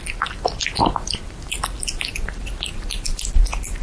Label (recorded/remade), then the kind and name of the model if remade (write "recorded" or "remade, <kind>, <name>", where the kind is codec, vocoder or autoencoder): recorded